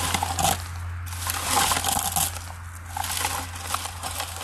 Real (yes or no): yes